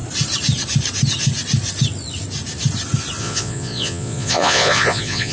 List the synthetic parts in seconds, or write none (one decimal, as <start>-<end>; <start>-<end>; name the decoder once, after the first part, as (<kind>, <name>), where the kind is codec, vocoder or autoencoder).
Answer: 3.2-5.3 (vocoder, Vocos)